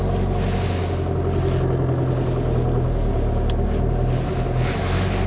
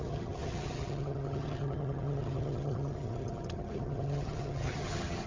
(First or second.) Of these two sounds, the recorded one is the first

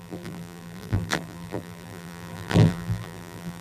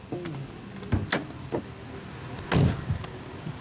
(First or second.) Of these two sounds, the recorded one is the second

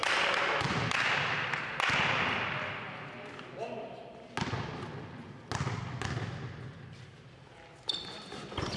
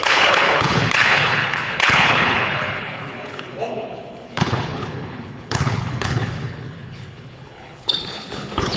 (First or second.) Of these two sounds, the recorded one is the first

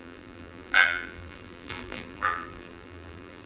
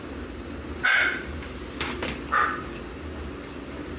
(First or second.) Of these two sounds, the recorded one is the second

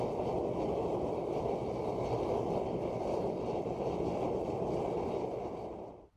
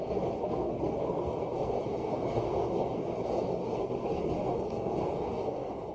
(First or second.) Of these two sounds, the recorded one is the first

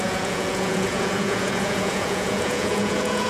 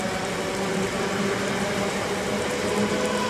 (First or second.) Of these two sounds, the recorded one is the second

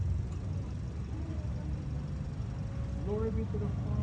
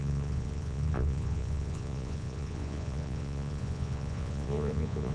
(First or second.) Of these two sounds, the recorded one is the first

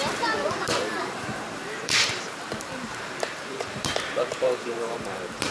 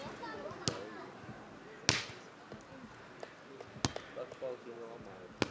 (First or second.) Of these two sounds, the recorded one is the second